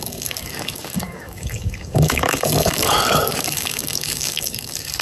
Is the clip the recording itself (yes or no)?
no